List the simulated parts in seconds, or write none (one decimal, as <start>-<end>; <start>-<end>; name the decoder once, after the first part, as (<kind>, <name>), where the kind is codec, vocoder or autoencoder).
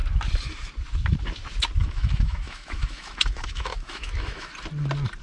1.8-4.5 (autoencoder, DAC-VAE)